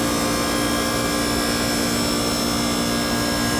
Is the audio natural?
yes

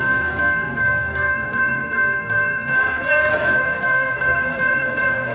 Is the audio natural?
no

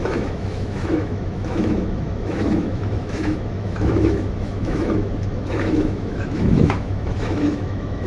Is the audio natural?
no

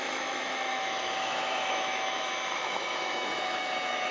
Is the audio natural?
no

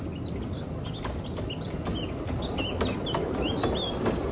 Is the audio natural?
yes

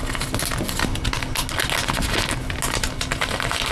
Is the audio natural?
yes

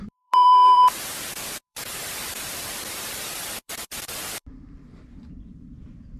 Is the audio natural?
no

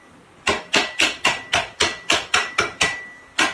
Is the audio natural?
yes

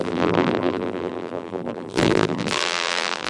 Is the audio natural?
no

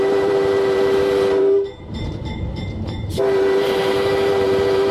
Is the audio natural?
no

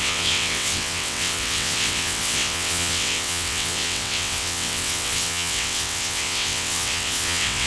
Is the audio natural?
no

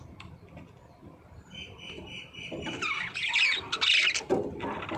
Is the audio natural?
no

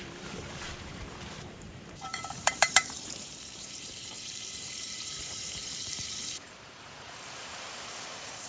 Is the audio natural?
no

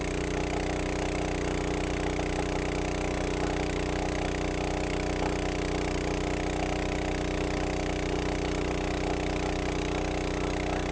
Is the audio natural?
yes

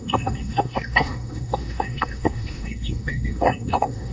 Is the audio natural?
no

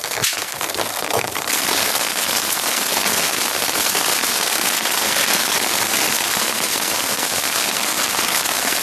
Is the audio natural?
no